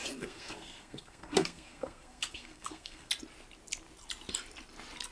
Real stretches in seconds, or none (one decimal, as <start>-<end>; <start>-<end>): 3.1-5.1